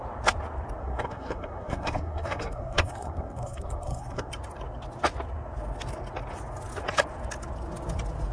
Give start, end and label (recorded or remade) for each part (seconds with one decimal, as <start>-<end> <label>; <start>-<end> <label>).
0.0-0.8 recorded; 0.8-4.3 remade; 4.3-8.3 recorded